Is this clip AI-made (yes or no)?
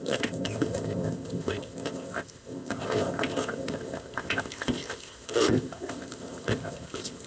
yes